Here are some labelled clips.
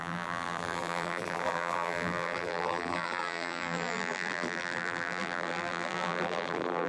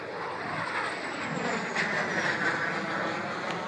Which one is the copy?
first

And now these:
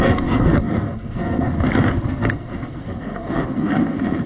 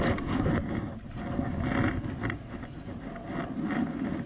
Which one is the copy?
first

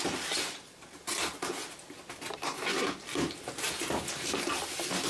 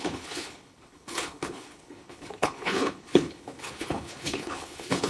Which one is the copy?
second